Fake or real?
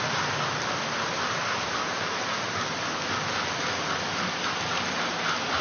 real